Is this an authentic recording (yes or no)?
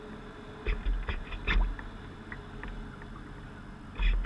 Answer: yes